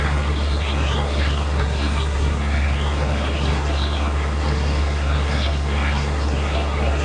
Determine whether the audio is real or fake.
fake